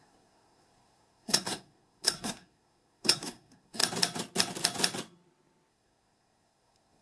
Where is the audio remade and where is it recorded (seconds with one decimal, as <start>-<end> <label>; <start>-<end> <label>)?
0.0-3.8 remade; 3.8-5.7 recorded; 5.7-7.0 remade